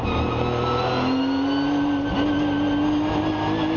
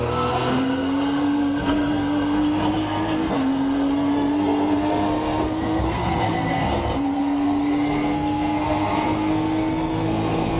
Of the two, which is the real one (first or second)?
first